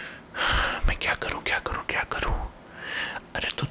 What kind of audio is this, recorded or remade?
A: recorded